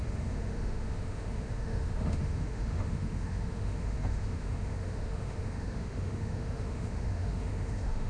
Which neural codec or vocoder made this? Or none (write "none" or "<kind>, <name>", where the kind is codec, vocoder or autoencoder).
autoencoder, DAC-VAE